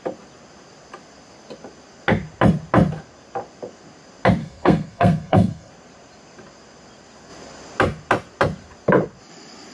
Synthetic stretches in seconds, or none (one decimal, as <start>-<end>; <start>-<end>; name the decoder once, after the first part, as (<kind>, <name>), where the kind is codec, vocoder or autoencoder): 4.4-5.7 (codec, SNAC)